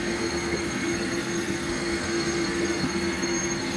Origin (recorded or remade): remade